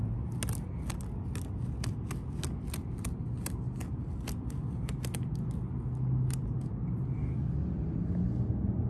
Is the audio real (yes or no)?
yes